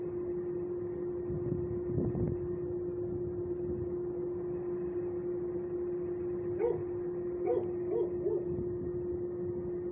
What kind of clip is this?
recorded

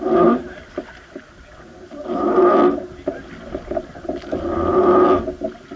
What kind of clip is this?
recorded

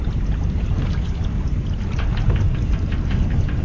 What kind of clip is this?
recorded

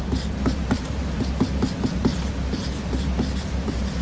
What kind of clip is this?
recorded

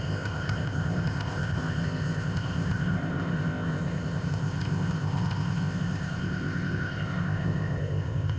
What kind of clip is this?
remade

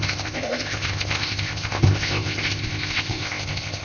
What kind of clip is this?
remade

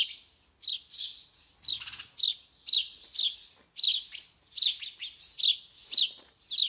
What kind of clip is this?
recorded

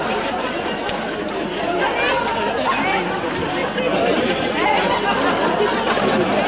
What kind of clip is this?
recorded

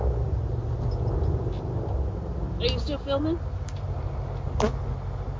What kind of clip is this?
recorded